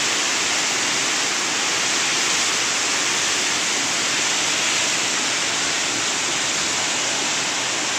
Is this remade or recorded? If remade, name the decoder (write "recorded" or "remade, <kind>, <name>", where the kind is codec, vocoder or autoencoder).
recorded